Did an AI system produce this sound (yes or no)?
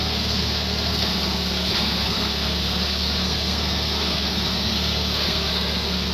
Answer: yes